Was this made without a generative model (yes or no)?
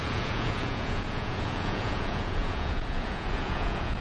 no